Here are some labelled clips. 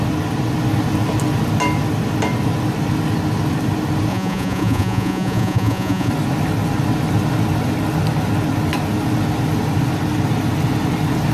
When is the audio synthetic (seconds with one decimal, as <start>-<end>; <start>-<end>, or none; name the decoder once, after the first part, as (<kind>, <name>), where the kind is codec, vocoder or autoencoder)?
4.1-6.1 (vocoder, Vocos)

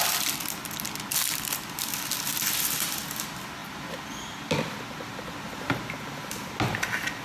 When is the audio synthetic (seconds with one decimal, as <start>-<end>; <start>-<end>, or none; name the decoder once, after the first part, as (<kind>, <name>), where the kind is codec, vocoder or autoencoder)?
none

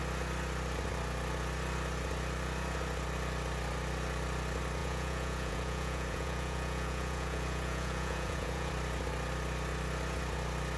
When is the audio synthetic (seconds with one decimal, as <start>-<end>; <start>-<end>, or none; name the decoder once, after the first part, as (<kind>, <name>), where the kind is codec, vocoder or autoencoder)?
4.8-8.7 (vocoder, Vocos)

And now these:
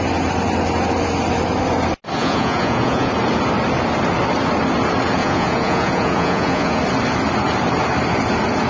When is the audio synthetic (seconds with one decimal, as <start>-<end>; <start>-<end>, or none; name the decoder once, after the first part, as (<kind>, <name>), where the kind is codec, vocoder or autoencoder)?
2.2-3.1 (vocoder, Vocos); 5.2-6.8

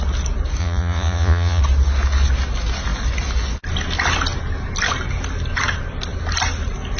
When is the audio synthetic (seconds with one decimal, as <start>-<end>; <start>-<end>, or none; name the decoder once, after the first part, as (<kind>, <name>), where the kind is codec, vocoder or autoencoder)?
0.6-1.6 (vocoder, Vocos)

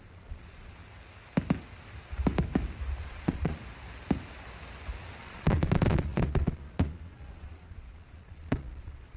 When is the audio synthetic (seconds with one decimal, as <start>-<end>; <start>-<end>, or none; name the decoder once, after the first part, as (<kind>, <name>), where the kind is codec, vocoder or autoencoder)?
0.0-0.8 (vocoder, Vocos); 3.0-3.6; 5.2-9.2